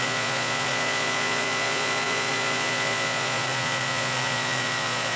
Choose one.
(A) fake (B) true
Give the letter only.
A